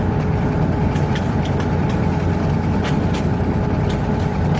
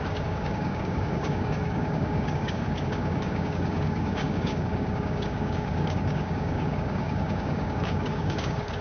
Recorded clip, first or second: first